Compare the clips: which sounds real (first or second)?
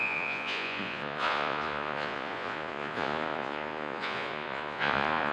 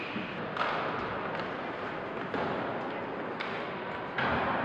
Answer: second